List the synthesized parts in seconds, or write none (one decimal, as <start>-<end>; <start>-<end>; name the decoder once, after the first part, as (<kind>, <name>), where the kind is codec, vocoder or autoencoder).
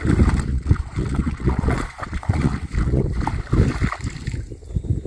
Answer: 0.5-3.0 (vocoder, Vocos)